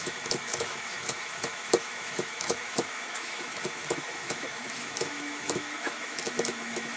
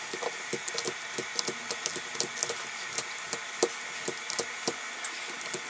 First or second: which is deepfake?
first